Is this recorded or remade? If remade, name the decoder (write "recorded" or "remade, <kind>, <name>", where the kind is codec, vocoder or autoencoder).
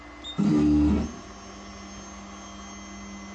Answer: recorded